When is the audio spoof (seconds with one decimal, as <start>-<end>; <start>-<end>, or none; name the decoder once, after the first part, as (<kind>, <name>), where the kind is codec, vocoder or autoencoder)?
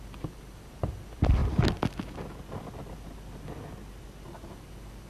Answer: 0.0-1.4 (vocoder, BigVGAN v2); 4.5-5.1